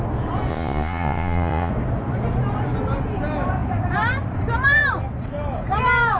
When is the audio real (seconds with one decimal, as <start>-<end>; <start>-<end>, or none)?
0.0-0.5; 1.7-6.2